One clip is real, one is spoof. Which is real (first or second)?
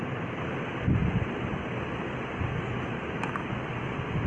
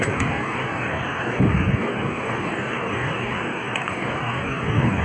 first